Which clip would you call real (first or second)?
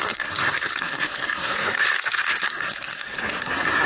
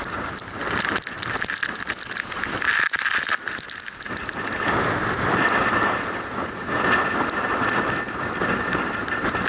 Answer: second